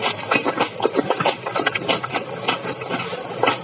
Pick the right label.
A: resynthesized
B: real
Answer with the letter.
B